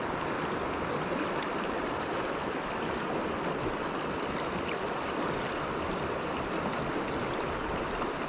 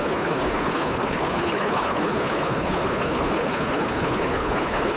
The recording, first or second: first